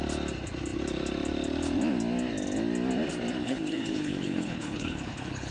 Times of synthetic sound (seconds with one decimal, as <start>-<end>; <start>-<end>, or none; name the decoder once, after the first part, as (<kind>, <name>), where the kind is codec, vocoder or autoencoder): 3.4-5.5 (codec, HILCodec)